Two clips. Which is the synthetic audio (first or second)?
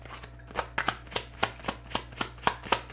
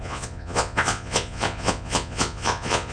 second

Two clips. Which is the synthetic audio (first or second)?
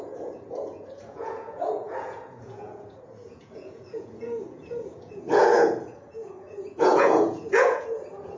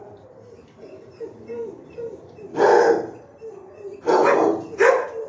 first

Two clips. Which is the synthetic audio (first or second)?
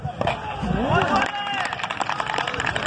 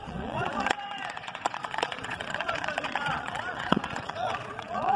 second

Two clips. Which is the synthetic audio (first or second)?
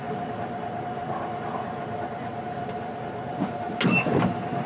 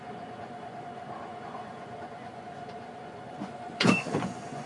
second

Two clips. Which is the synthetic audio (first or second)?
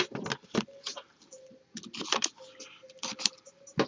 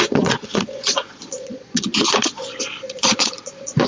second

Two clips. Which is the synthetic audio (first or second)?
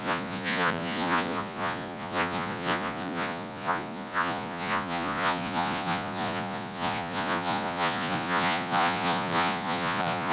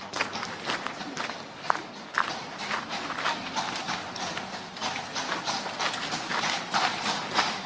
first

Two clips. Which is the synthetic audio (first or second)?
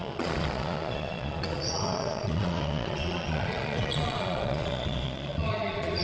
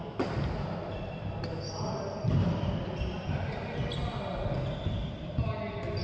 first